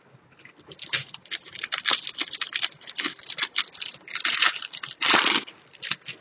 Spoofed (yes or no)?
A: no